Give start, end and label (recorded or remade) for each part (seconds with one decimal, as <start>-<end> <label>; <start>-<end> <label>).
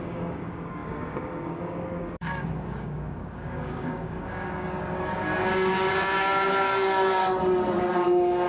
0.0-7.2 remade; 7.2-7.9 recorded; 7.9-8.5 remade